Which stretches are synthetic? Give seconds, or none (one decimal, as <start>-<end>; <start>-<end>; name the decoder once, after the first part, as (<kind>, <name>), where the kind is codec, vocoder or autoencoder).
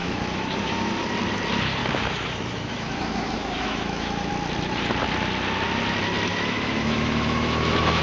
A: 0.0-0.9 (autoencoder, DAC-VAE); 1.8-4.3; 6.3-8.0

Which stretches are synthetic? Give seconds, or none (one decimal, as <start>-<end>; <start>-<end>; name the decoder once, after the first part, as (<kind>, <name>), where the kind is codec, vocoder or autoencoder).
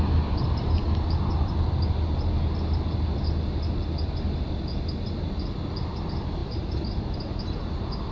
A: 6.4-7.0 (vocoder, BigVGAN v2)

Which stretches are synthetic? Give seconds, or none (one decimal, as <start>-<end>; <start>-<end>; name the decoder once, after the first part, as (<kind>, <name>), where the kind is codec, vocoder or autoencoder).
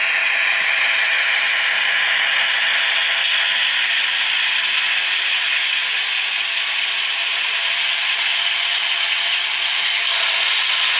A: none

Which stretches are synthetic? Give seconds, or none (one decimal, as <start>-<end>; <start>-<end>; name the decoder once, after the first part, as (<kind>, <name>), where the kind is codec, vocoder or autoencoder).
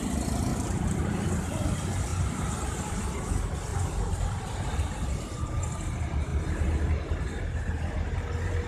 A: 0.5-1.3 (vocoder, BigVGAN v2); 2.1-3.0; 3.7-5.6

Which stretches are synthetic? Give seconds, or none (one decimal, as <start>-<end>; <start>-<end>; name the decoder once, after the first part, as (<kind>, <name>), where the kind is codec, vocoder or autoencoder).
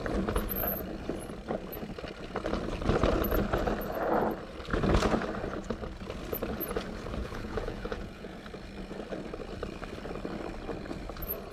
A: 7.2-8.4 (vocoder, Vocos)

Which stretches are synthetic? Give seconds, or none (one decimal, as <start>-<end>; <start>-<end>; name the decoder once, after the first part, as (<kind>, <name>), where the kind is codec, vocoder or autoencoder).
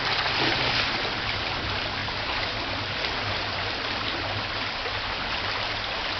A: none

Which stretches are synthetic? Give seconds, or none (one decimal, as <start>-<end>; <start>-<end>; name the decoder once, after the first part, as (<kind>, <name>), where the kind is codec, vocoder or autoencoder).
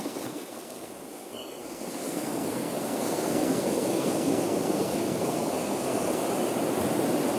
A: 0.0-6.2 (codec, SNAC)